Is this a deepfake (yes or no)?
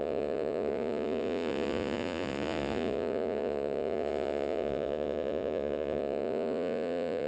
yes